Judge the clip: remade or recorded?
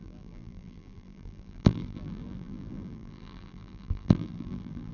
remade